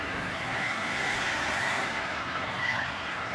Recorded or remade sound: remade